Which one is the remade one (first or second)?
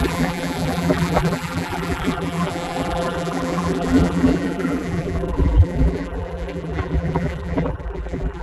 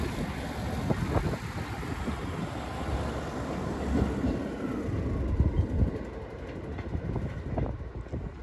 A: first